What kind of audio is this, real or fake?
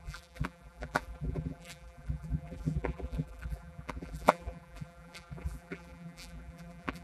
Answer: fake